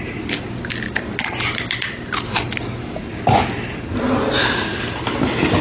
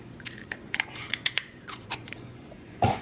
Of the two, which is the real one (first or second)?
first